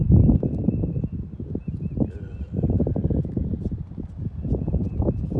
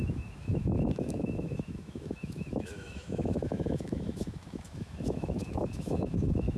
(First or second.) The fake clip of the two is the second